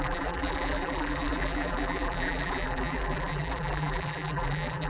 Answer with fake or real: fake